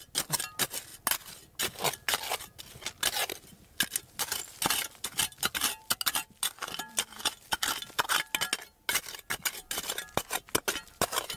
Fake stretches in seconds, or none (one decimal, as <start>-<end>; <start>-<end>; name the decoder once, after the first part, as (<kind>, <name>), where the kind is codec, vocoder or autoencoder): none